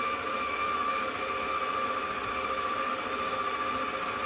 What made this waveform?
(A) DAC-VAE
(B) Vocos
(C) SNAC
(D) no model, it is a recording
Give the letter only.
D